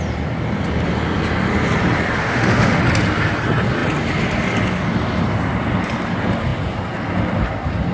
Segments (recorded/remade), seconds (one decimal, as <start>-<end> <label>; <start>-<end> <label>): 0.0-2.2 recorded; 2.2-2.8 remade; 2.8-7.9 recorded